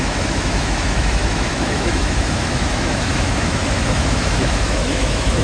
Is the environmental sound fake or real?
fake